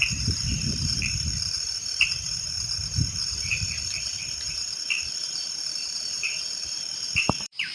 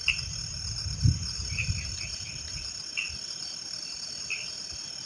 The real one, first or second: second